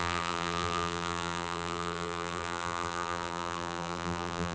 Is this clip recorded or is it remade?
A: remade